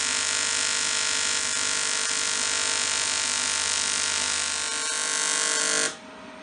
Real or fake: real